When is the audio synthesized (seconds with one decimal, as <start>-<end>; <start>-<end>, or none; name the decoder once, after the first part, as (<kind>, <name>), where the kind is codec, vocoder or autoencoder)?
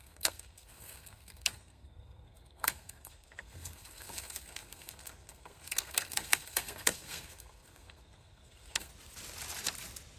0.0-8.9 (codec, SNAC)